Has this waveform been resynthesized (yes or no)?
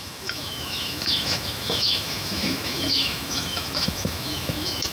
yes